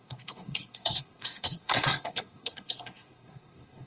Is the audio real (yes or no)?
no